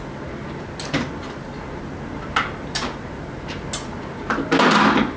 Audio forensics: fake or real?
real